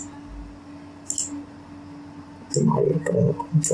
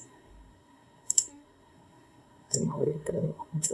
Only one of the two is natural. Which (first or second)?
first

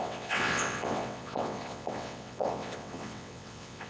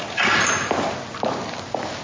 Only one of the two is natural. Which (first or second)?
second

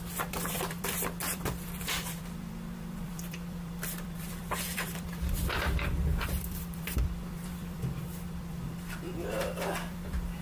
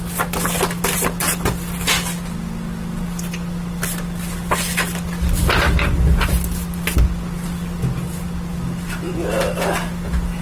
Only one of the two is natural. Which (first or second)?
second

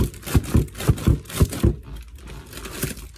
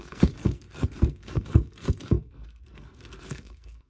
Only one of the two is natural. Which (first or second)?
first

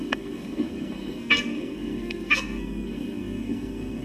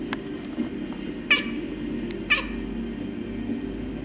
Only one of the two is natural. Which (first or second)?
second